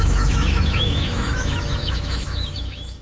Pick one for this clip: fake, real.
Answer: fake